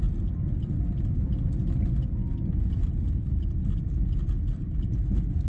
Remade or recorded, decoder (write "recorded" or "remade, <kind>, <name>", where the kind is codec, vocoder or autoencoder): recorded